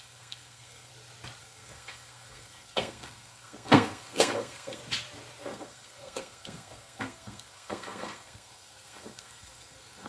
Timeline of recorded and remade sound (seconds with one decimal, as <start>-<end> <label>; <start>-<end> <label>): 0.0-0.9 remade; 0.9-1.4 recorded; 1.4-4.8 remade; 4.8-5.4 recorded; 5.4-10.1 remade